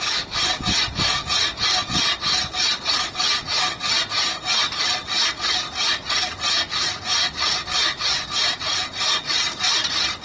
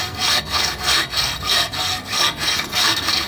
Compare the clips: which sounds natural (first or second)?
first